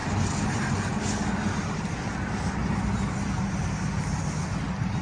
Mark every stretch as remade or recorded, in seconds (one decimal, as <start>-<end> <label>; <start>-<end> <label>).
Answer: 0.0-5.0 recorded